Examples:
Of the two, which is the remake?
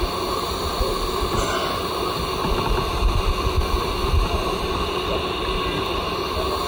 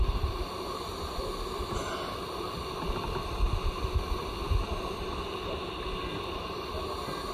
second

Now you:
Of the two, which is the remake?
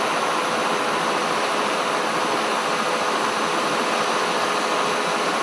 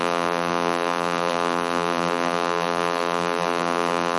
second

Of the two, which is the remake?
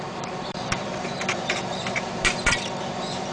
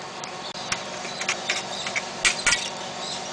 first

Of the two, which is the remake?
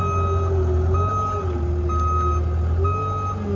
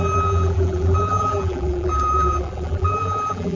second